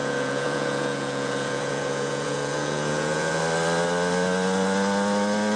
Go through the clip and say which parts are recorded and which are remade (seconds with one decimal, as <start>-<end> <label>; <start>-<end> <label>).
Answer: 0.0-3.4 remade; 3.4-5.6 recorded